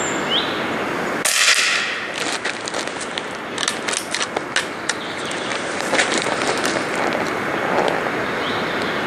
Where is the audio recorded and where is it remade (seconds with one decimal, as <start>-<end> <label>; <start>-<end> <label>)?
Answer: 0.0-5.5 recorded; 5.5-7.5 remade; 7.5-9.1 recorded